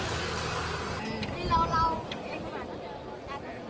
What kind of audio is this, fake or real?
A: real